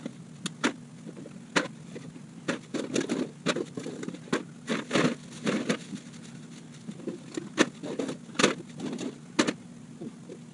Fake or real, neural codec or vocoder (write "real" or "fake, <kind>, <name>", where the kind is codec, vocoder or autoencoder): real